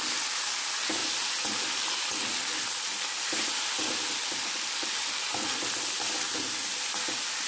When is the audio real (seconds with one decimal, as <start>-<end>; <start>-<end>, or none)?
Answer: 0.0-7.5